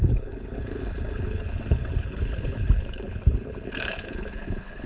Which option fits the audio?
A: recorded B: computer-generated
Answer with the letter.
B